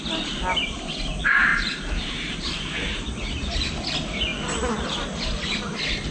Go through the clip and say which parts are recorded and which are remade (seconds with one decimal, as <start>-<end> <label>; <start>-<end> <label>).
0.0-1.5 recorded; 1.5-3.7 remade; 3.7-6.1 recorded